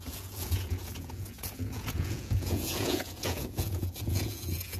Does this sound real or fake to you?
fake